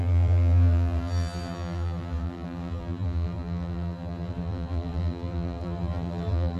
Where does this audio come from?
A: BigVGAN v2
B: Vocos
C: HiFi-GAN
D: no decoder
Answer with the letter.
A